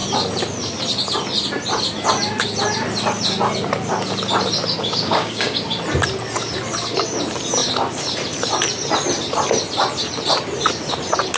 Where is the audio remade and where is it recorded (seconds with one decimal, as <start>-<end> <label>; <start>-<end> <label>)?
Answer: 0.0-4.8 recorded; 4.8-5.6 remade; 5.6-11.4 recorded